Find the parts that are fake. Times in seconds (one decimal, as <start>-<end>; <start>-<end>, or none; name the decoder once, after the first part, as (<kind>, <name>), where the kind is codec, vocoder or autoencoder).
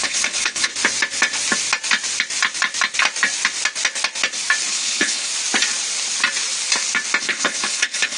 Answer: 0.0-0.7 (codec, HILCodec); 4.7-5.3; 7.2-8.2